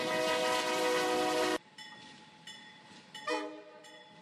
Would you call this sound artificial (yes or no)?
yes